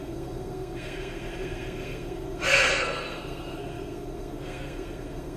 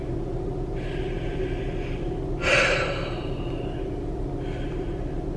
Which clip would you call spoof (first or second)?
first